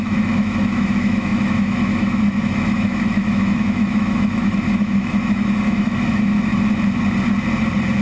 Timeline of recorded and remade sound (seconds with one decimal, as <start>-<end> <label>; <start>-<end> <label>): 0.0-6.5 remade; 6.5-8.0 recorded